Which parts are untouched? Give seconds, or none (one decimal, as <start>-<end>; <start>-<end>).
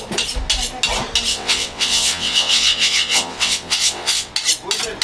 0.0-1.3; 4.3-5.0